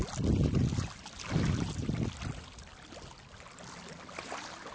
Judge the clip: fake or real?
real